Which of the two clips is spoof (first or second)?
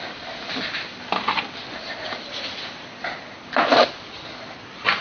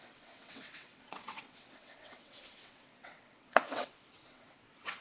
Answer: second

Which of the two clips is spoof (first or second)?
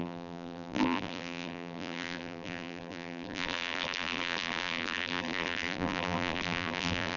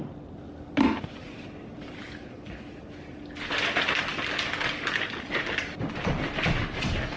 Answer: first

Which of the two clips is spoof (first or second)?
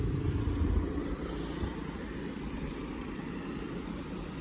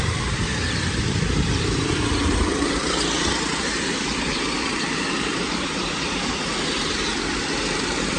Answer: second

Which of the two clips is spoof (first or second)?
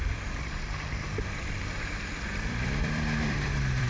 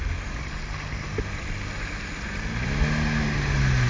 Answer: first